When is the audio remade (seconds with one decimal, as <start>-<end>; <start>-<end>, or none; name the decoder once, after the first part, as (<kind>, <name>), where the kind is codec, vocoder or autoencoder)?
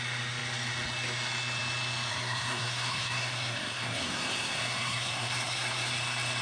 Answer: 2.1-5.9 (codec, SNAC)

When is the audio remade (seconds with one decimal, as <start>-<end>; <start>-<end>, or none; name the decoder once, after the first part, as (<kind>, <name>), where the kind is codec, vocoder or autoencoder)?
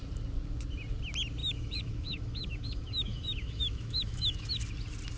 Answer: 1.4-4.5 (autoencoder, DAC-VAE)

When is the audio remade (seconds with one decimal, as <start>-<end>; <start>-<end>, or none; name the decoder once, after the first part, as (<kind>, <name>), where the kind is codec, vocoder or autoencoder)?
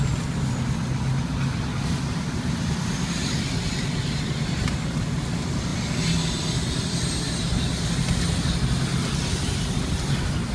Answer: none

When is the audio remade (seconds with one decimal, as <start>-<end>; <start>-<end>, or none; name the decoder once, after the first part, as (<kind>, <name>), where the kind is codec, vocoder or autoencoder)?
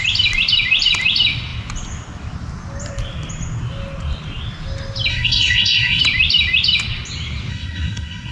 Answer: 5.1-6.0 (codec, SNAC); 7.5-8.3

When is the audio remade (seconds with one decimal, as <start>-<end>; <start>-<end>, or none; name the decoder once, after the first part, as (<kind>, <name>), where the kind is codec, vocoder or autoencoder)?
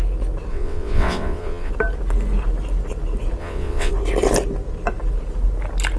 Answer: 0.5-1.7 (vocoder, WaveNeXt); 3.4-3.9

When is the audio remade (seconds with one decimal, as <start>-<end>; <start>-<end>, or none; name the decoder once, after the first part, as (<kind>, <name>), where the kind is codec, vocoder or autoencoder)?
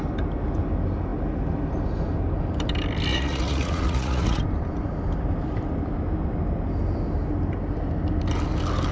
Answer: 3.1-4.4 (vocoder, Vocos)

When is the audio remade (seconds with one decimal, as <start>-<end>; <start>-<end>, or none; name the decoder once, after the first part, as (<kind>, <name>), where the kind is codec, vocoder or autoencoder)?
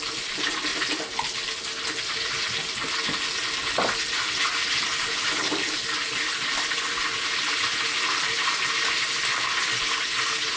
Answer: 0.0-0.7 (vocoder, BigVGAN v2); 5.0-10.6